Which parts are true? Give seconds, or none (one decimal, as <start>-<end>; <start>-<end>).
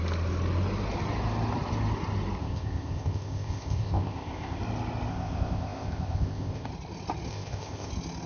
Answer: 0.0-2.4; 4.6-5.1; 6.7-7.3; 7.9-8.3